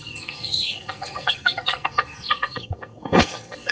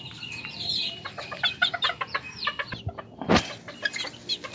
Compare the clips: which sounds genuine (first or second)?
second